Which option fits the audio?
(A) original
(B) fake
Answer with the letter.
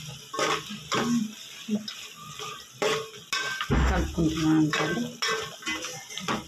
A